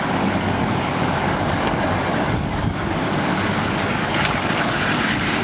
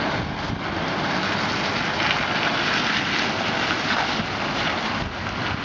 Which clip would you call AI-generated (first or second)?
first